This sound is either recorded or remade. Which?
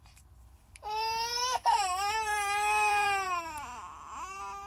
remade